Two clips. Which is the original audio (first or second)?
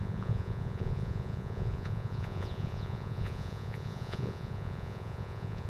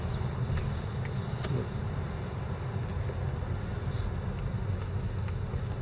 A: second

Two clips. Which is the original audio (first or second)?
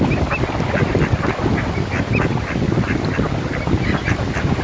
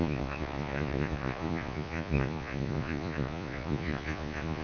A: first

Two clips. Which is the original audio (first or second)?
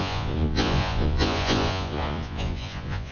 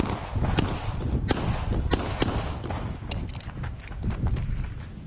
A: second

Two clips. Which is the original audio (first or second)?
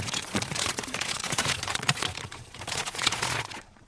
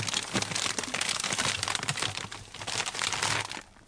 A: second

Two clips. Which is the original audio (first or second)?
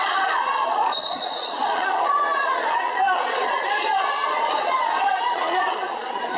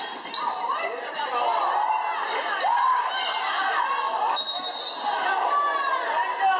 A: second